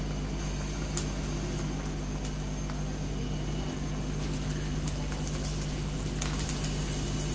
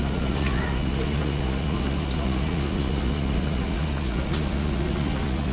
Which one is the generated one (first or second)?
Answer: second